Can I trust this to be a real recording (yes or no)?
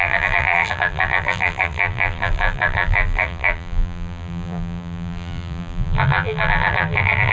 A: no